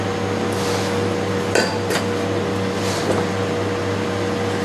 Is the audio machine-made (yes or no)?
no